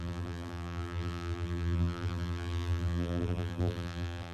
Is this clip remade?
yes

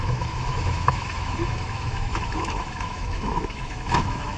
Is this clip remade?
yes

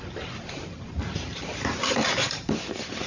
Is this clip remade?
yes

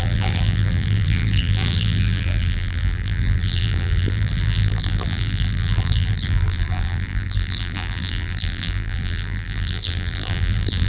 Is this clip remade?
yes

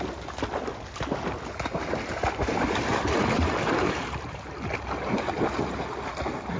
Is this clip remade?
no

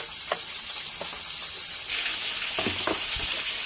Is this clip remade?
no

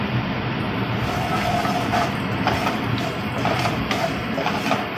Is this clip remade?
no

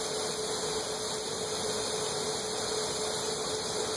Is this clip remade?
no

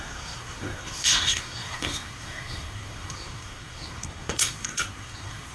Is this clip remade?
yes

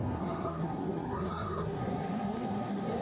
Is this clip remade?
yes